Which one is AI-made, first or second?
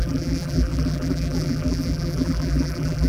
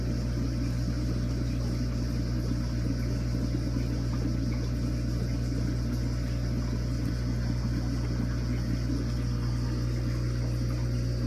first